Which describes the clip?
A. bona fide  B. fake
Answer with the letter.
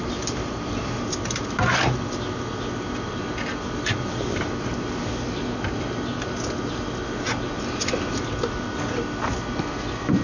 A